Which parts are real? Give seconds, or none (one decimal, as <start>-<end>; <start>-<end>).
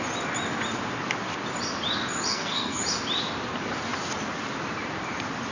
0.0-2.3; 2.8-5.5